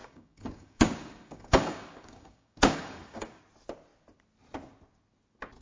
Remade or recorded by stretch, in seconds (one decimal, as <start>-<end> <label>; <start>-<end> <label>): 0.0-3.4 remade; 3.4-5.6 recorded